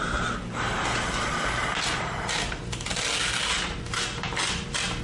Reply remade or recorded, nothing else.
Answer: recorded